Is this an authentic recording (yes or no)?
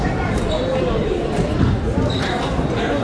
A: no